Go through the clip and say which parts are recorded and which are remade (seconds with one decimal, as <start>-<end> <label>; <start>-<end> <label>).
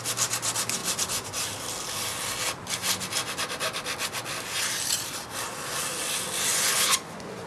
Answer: 0.0-6.5 recorded; 6.5-7.5 remade